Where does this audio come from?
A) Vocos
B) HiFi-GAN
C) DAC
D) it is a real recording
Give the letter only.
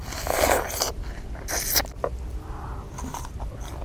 D